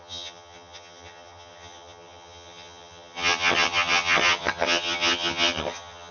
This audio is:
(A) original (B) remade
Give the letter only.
B